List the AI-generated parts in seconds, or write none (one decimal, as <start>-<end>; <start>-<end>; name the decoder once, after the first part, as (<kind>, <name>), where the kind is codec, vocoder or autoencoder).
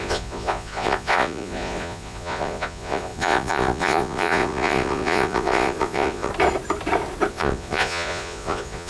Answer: 0.0-6.3 (vocoder, Vocos); 7.3-8.9